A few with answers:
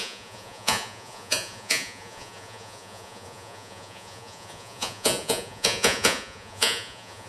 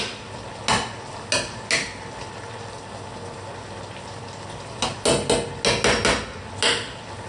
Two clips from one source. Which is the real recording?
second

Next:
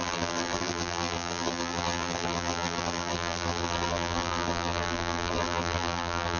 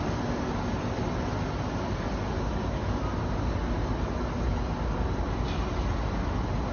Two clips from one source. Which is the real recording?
second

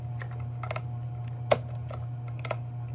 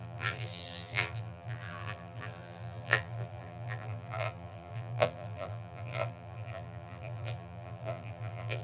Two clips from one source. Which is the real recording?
first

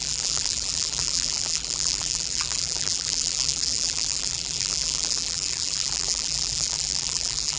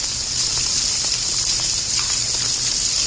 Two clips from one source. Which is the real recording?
second